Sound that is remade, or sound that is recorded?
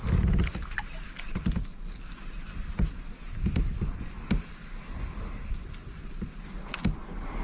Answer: recorded